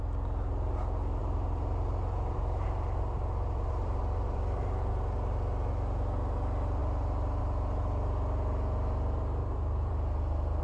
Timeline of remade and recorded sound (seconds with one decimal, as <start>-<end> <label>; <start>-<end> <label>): 0.0-1.2 recorded; 1.2-4.9 remade; 4.9-9.4 recorded; 9.4-10.6 remade